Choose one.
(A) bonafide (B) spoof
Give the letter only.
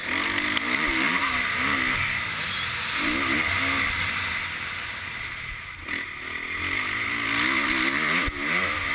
A